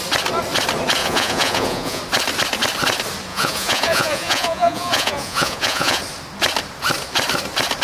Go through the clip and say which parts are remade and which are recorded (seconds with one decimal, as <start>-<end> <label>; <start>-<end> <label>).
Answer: 0.0-1.0 recorded; 1.0-2.0 remade; 2.0-3.3 recorded; 3.3-6.0 remade; 6.0-7.8 recorded

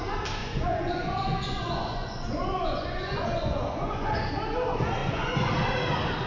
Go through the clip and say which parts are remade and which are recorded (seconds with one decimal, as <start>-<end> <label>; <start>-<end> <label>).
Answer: 0.0-0.4 recorded; 0.4-4.2 remade; 4.2-5.0 recorded; 5.0-5.5 remade; 5.5-6.3 recorded

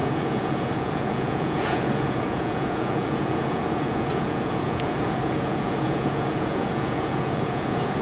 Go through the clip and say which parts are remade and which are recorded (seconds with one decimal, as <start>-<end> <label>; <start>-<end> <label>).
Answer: 0.0-8.0 remade

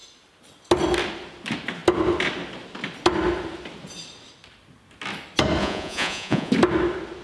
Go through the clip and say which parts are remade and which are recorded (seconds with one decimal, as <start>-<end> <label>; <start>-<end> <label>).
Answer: 0.0-5.6 recorded; 5.6-6.5 remade; 6.5-7.2 recorded

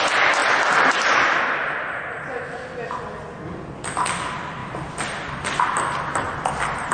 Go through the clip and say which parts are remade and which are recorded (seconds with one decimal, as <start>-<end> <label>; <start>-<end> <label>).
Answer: 0.0-6.9 recorded

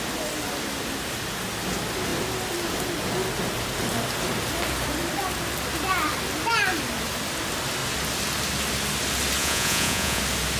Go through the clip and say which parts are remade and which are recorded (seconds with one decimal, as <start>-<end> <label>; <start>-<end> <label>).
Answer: 0.0-9.4 recorded; 9.4-10.2 remade; 10.2-10.6 recorded

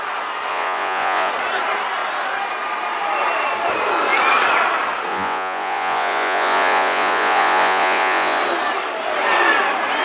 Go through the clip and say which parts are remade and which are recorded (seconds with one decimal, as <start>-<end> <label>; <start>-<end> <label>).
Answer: 0.0-0.5 recorded; 0.5-1.3 remade; 1.3-5.1 recorded; 5.1-8.4 remade; 8.4-10.0 recorded